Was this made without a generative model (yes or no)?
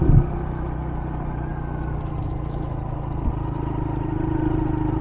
yes